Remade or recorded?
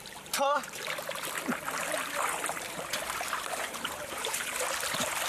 remade